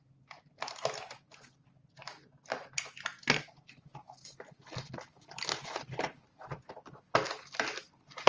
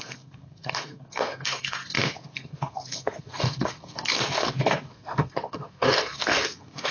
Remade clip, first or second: second